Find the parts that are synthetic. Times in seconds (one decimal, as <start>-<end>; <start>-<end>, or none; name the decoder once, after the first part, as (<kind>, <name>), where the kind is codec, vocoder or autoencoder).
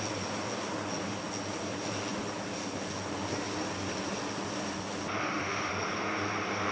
5.2-5.7 (autoencoder, DAC-VAE)